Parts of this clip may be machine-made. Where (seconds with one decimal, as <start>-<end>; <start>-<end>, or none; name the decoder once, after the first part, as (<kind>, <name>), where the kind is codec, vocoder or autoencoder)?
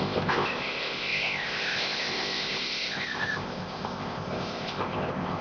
0.0-5.4 (codec, ZipCodec)